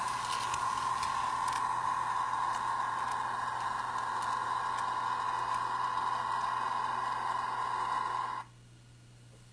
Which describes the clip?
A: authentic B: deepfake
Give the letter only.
A